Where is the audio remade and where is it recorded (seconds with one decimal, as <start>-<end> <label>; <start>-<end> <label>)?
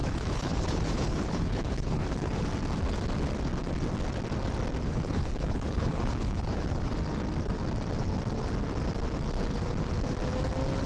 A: 0.0-2.3 remade; 2.3-4.8 recorded; 4.8-6.9 remade; 6.9-10.9 recorded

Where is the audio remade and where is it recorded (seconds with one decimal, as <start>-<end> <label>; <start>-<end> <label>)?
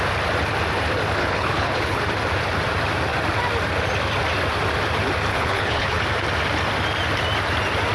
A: 0.0-1.2 recorded; 1.2-2.0 remade; 2.0-5.3 recorded; 5.3-6.0 remade; 6.0-7.9 recorded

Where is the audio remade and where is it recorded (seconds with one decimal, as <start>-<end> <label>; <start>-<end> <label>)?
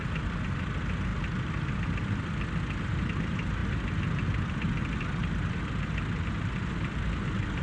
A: 0.0-7.6 recorded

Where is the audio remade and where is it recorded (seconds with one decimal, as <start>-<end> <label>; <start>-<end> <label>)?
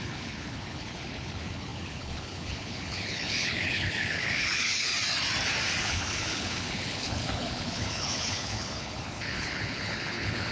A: 0.0-4.9 remade; 4.9-5.8 recorded; 5.8-10.5 remade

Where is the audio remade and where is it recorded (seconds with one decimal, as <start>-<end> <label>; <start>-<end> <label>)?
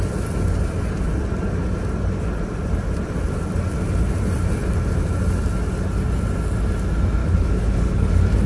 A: 0.0-7.2 recorded; 7.2-8.1 remade; 8.1-8.5 recorded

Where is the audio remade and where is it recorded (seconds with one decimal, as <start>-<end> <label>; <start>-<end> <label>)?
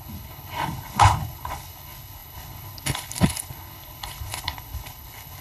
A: 0.0-5.4 remade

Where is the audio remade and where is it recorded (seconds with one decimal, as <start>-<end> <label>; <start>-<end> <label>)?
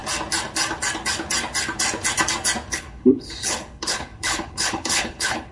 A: 0.0-2.7 recorded; 2.7-5.5 remade